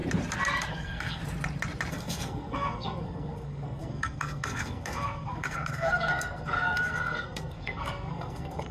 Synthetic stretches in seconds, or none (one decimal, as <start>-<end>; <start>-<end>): 0.7-1.2; 1.9-8.7